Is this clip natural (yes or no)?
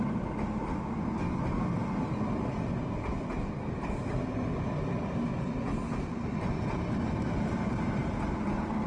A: yes